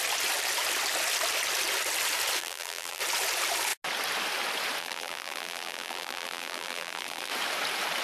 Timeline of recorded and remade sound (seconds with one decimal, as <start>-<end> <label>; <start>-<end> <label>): 0.0-2.4 recorded; 2.4-3.0 remade; 3.0-4.8 recorded; 4.8-7.3 remade; 7.3-8.0 recorded

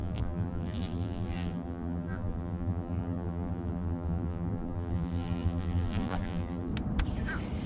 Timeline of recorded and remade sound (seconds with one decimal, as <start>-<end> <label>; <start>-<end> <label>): 0.0-6.7 remade; 6.7-7.7 recorded

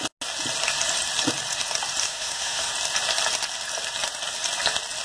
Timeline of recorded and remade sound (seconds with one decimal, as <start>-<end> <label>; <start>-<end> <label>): 0.0-2.0 recorded; 2.0-2.7 remade; 2.7-5.0 recorded

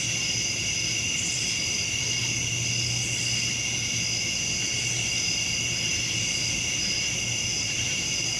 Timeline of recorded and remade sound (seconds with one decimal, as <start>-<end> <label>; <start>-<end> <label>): 0.0-8.4 recorded

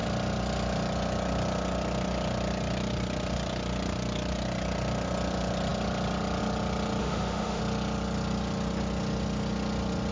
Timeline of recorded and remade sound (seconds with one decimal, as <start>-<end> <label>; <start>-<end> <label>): 0.0-7.0 recorded; 7.0-7.6 remade; 7.6-10.1 recorded

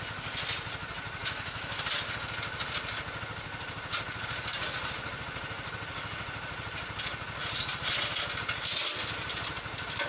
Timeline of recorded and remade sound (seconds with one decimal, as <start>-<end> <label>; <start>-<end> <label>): 0.0-1.2 recorded; 1.2-1.8 remade; 1.8-10.1 recorded